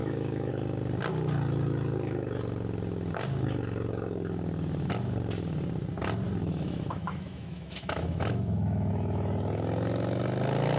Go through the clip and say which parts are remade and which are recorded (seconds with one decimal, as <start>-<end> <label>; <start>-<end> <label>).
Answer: 0.0-0.5 remade; 0.5-6.4 recorded; 6.4-8.9 remade; 8.9-10.8 recorded